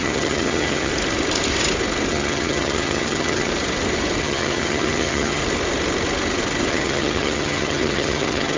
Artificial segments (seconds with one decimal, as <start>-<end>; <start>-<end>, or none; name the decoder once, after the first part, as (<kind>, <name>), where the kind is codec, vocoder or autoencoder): 0.0-0.9 (vocoder, HiFi-GAN); 2.1-3.5; 4.2-5.4; 6.7-8.6